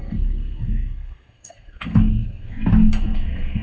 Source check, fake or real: fake